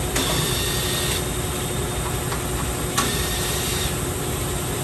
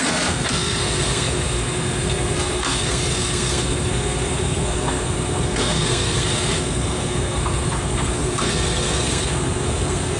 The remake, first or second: second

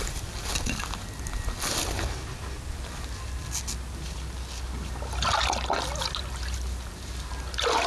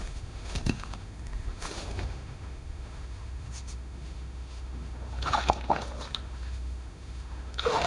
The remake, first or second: second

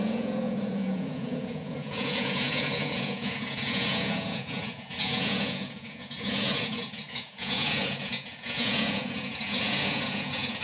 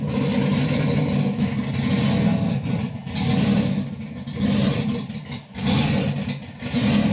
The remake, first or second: first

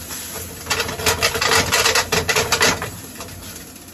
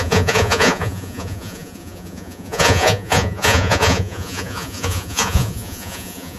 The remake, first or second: second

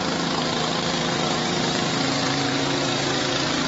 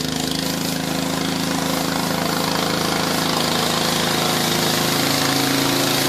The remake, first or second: first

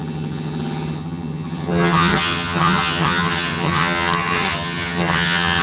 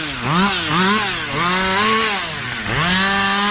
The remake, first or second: first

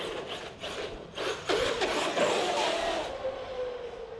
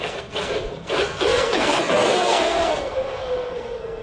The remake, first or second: second